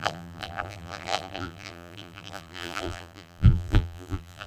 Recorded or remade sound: remade